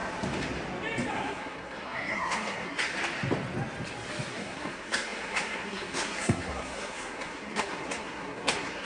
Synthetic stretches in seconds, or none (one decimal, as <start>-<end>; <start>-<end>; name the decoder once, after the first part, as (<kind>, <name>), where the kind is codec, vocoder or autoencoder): 1.1-2.9 (codec, SNAC); 4.3-8.9